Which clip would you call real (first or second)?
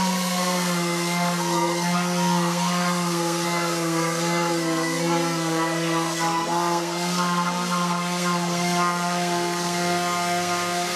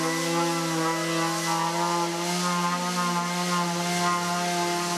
second